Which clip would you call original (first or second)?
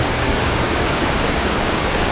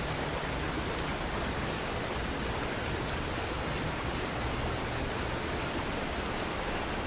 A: second